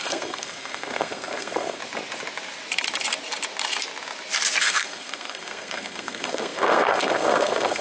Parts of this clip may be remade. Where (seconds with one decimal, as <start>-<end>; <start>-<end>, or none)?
0.0-1.8; 4.6-7.8